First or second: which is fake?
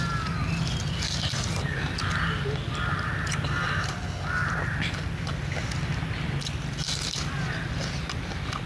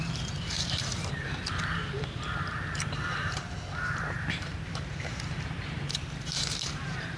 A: second